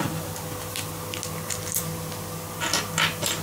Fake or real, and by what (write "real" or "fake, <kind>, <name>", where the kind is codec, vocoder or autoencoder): real